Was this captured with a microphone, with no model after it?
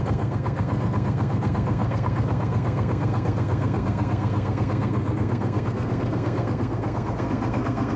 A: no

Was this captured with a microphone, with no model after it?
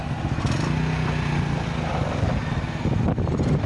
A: yes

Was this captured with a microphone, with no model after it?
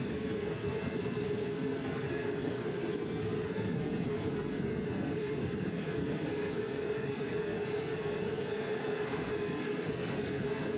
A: no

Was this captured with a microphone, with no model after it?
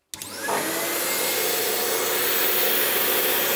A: yes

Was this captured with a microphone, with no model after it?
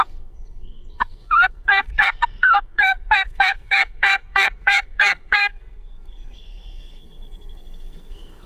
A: no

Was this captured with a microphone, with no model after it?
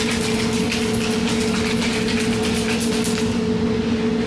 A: yes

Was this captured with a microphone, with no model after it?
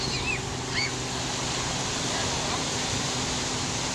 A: yes